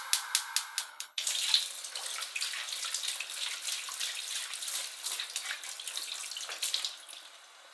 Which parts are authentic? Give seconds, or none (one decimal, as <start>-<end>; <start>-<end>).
0.0-0.8; 1.3-7.7